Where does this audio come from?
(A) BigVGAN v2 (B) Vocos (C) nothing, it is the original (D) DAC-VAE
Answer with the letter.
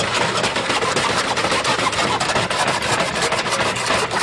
C